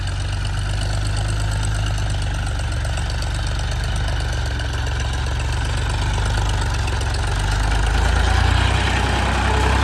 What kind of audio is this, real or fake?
real